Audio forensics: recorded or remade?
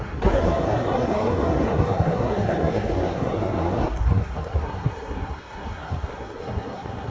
remade